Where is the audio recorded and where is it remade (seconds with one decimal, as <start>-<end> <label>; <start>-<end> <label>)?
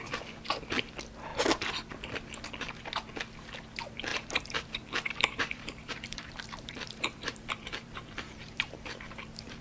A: 0.0-4.1 recorded; 4.1-9.6 remade